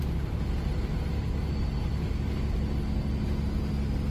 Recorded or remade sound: recorded